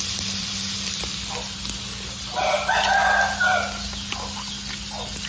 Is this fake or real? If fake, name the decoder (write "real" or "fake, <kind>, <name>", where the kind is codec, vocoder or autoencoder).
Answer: real